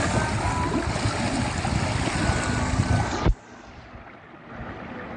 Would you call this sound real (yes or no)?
yes